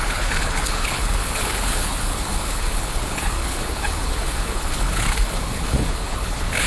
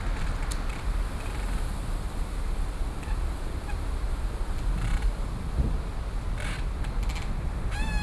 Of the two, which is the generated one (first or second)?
first